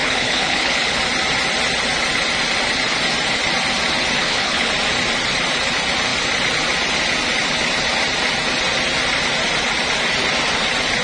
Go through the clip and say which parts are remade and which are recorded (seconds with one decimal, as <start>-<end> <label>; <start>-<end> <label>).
0.0-1.0 remade; 1.0-4.2 recorded; 4.2-4.7 remade; 4.7-11.0 recorded